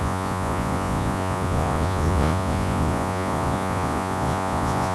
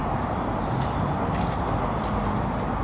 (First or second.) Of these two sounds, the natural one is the second